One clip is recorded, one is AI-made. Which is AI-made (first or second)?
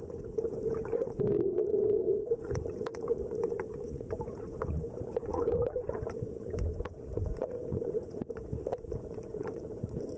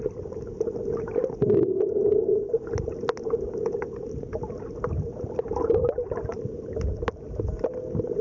first